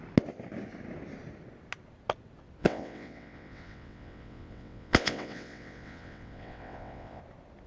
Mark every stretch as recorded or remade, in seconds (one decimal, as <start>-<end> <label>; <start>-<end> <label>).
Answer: 0.0-2.6 recorded; 2.6-7.2 remade; 7.2-7.7 recorded